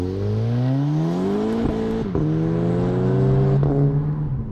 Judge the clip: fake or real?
real